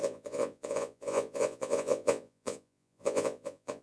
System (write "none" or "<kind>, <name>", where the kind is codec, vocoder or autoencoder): vocoder, Vocos